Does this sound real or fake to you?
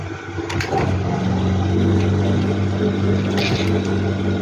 real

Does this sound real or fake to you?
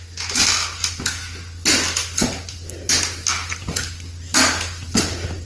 real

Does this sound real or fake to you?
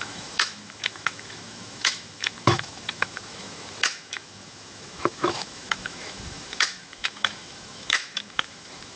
fake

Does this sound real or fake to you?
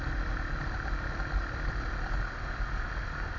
real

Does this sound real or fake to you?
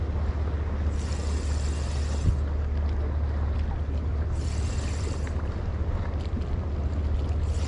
real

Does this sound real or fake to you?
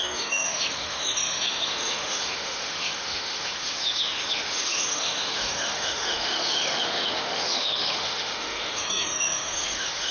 fake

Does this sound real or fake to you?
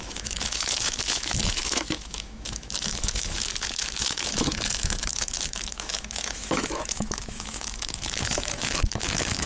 fake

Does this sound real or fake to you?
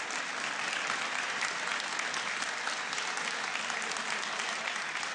real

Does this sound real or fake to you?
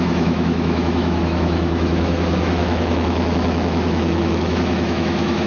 fake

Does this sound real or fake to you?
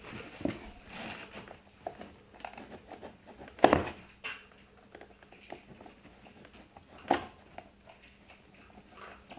real